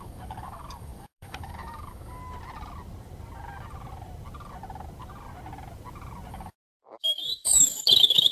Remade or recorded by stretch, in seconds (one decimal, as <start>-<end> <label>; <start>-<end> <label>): 0.0-2.2 remade; 2.2-6.3 recorded; 6.3-8.3 remade